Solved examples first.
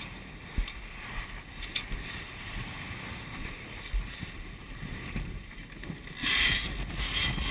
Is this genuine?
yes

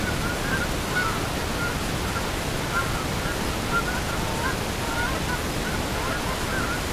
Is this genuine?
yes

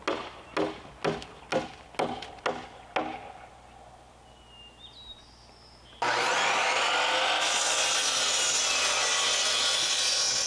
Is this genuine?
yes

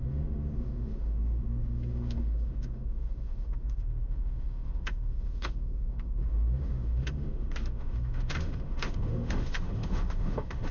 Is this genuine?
no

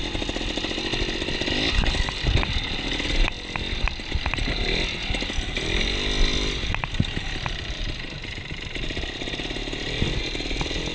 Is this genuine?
yes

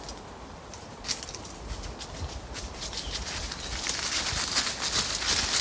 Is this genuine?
yes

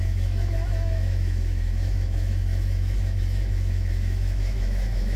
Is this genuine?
no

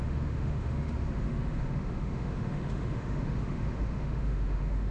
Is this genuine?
no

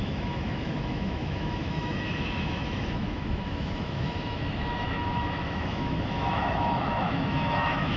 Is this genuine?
no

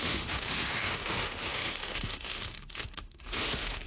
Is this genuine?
no